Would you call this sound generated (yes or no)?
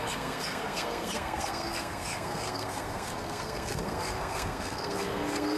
yes